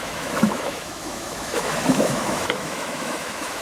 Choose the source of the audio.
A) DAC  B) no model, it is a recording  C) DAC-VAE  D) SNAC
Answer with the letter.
C